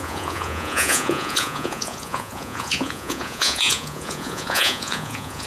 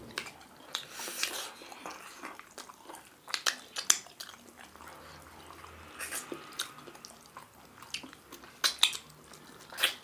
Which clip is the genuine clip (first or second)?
second